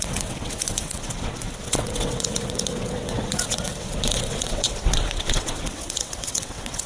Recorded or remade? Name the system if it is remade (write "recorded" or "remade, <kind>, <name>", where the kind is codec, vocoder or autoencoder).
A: remade, vocoder, WaveNeXt